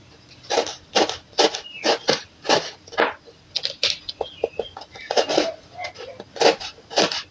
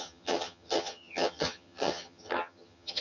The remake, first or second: second